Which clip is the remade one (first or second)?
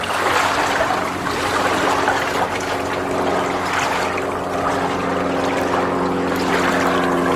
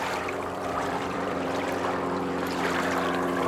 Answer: second